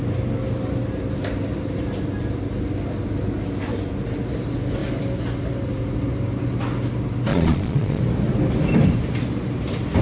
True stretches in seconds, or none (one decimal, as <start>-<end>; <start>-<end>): 0.0-7.3; 8.0-10.0